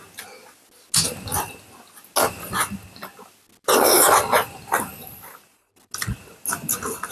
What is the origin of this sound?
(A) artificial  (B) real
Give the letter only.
B